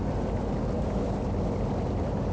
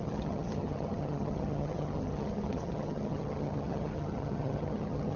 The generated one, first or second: second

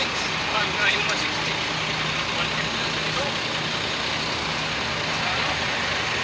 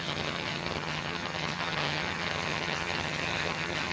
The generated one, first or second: second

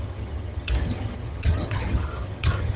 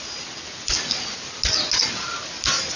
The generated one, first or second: first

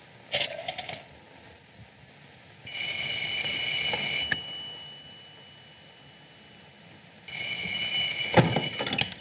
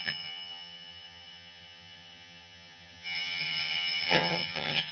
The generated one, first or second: second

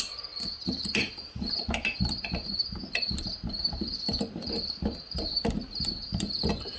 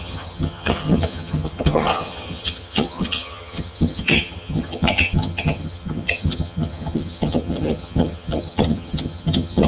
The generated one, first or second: second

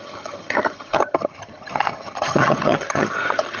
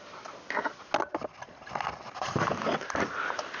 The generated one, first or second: first